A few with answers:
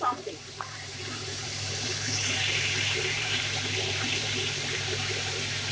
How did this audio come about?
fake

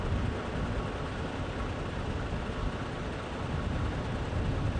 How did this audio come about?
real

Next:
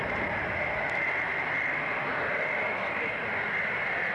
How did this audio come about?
real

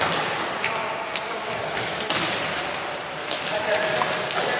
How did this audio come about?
real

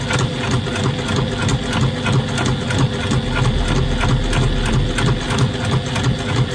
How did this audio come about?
real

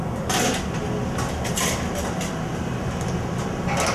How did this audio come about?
real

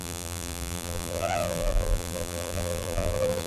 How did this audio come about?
fake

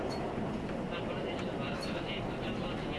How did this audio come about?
real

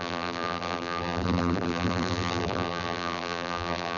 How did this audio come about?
fake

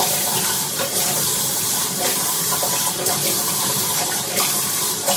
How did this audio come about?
fake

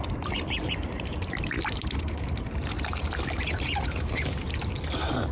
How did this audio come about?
fake